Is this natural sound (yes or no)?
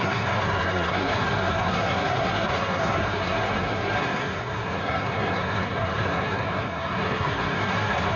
no